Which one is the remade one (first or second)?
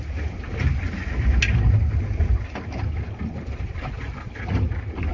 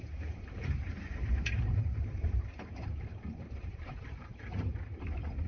second